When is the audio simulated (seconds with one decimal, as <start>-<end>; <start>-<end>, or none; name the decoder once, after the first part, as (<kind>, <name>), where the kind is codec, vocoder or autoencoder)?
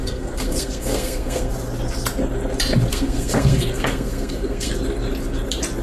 0.0-1.5 (codec, SNAC); 2.9-4.7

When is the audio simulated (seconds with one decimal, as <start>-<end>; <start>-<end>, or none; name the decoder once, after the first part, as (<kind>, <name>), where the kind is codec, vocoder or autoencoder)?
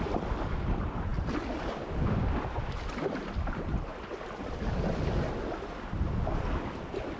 0.0-3.9 (vocoder, BigVGAN v2); 6.2-7.2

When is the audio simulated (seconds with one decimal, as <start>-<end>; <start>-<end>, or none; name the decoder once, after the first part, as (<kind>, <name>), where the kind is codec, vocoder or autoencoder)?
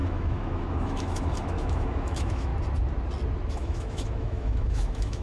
0.0-2.5 (autoencoder, DAC-VAE); 3.5-5.2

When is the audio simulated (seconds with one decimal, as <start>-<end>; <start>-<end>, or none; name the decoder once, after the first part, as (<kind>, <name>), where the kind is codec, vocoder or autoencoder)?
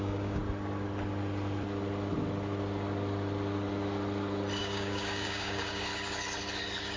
0.0-0.4 (codec, DAC); 4.6-5.9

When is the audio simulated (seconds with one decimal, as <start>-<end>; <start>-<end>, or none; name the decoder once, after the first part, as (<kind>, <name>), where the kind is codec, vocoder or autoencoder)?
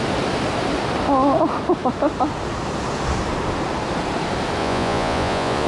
4.6-5.7 (vocoder, Vocos)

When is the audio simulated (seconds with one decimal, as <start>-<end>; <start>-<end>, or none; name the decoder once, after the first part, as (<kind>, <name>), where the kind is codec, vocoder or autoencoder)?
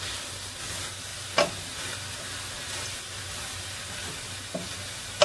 none